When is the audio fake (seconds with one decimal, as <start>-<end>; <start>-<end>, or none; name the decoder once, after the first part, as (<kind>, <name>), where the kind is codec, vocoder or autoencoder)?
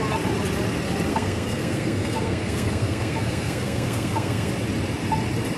1.1-4.5 (codec, SNAC)